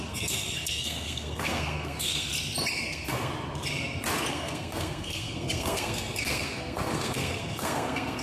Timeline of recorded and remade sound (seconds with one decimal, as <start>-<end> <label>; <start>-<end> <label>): 0.0-2.3 remade; 2.3-2.8 recorded; 2.8-3.3 remade; 3.3-4.3 recorded; 4.3-8.2 remade

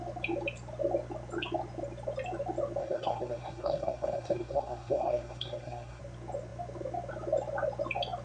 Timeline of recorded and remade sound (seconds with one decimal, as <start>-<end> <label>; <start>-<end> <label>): 0.0-2.8 recorded; 2.8-6.0 remade; 6.0-8.2 recorded

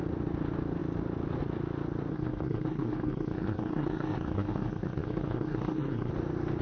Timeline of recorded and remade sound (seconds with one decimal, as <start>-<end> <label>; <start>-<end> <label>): 0.0-2.1 recorded; 2.1-6.1 remade; 6.1-6.6 recorded